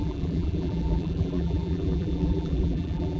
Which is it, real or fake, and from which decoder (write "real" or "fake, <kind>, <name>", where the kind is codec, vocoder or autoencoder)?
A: fake, vocoder, BigVGAN v2